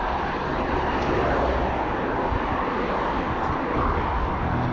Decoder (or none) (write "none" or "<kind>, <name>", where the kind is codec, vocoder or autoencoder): none